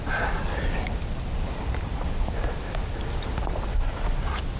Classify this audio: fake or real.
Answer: real